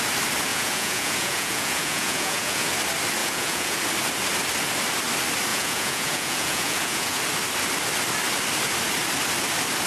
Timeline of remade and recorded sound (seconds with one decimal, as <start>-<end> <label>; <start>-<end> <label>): 0.0-0.5 recorded; 0.5-2.7 remade; 2.7-3.2 recorded; 3.2-3.8 remade; 3.8-5.5 recorded; 5.5-7.2 remade; 7.2-9.9 recorded